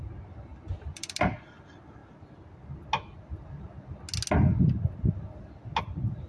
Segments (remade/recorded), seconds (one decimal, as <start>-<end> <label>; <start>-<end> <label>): 0.0-0.5 recorded; 0.5-1.3 remade; 1.3-6.3 recorded